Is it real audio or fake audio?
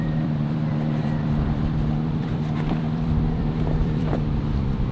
fake